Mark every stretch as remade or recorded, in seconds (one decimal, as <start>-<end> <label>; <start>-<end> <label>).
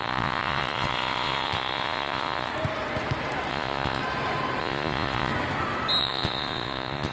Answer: 0.0-2.5 remade; 2.5-3.5 recorded; 3.5-4.0 remade; 4.0-4.6 recorded; 4.6-5.3 remade; 5.3-6.0 recorded; 6.0-7.1 remade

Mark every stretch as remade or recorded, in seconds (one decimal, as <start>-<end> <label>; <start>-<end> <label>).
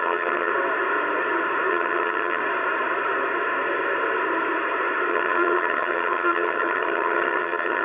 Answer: 0.0-0.5 remade; 0.5-1.7 recorded; 1.7-2.4 remade; 2.4-5.1 recorded; 5.1-7.8 remade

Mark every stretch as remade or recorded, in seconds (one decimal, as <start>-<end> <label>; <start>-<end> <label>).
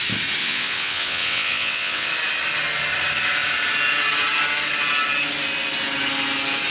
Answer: 0.0-0.4 recorded; 0.4-2.1 remade; 2.1-6.7 recorded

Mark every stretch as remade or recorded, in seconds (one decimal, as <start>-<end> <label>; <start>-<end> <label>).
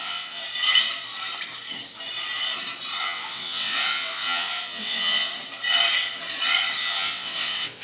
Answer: 0.0-0.4 remade; 0.4-3.0 recorded; 3.0-5.3 remade; 5.3-6.8 recorded; 6.8-7.8 remade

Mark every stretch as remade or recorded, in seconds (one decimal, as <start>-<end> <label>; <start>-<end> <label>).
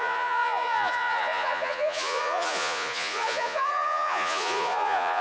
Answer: 0.0-5.2 remade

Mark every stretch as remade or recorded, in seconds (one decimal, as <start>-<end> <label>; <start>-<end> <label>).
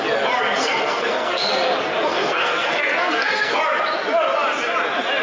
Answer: 0.0-0.6 recorded; 0.6-1.5 remade; 1.5-2.1 recorded; 2.1-3.6 remade; 3.6-5.2 recorded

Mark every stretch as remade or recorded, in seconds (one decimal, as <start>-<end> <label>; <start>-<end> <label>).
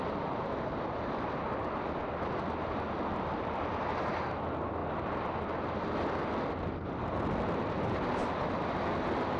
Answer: 0.0-9.4 recorded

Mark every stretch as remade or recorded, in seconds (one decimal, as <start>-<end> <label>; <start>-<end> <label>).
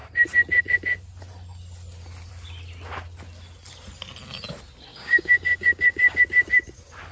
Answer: 0.0-4.9 recorded; 4.9-6.2 remade; 6.2-7.1 recorded